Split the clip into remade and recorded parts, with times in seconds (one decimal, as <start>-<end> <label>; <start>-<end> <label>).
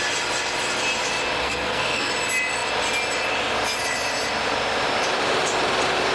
0.0-1.4 recorded; 1.4-2.1 remade; 2.1-6.1 recorded